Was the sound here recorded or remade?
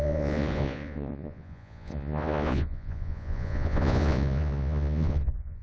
remade